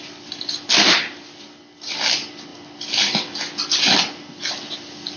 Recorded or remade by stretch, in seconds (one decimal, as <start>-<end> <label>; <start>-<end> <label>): 0.0-5.2 recorded